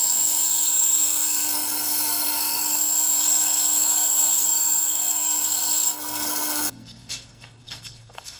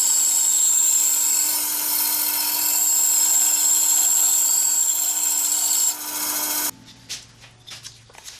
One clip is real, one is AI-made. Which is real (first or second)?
second